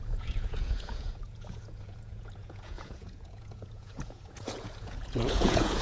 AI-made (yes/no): yes